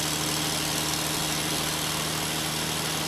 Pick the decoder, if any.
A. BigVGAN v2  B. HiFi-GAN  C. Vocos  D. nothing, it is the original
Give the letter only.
D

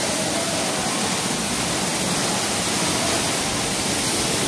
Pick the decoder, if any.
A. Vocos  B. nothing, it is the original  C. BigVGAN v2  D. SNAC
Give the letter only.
B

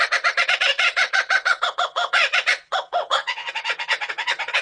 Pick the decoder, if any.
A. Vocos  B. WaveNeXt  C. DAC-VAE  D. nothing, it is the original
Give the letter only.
B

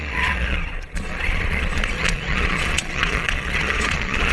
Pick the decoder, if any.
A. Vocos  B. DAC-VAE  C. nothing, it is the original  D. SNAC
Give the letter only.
A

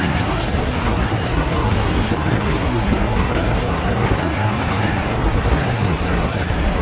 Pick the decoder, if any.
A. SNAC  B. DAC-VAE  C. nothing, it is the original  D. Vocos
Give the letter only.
A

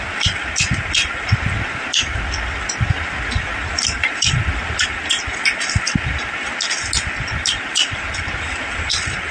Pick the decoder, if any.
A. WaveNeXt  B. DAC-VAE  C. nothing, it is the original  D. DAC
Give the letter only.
C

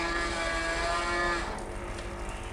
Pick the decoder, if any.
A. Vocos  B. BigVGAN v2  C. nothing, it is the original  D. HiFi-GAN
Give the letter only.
C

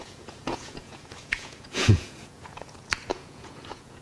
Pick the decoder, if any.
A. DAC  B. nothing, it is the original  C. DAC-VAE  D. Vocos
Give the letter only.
D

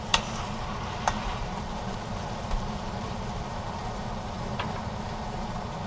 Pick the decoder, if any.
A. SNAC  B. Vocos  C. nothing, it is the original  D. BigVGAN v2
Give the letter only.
D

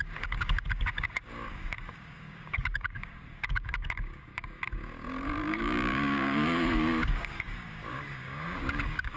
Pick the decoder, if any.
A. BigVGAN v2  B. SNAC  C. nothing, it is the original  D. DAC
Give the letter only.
D